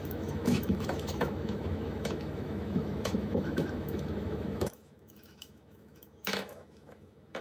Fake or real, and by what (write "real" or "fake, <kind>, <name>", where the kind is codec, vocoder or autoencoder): fake, autoencoder, DAC-VAE